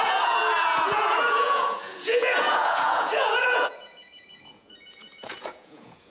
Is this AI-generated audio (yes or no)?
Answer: yes